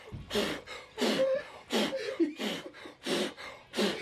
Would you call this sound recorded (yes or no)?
yes